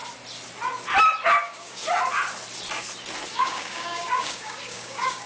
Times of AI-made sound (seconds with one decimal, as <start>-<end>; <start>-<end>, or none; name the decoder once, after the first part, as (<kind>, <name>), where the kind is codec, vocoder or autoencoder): 1.4-1.8 (codec, DAC); 3.3-5.3